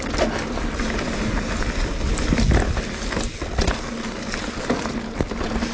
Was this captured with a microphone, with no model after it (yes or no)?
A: yes